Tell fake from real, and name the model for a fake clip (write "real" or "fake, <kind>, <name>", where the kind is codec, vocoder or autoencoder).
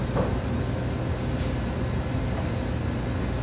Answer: real